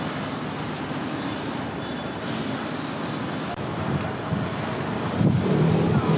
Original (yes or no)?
yes